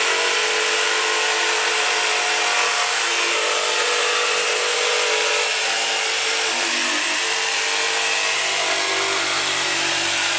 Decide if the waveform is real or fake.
real